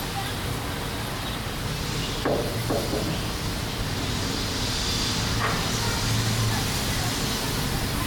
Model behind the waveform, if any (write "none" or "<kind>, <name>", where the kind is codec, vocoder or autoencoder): none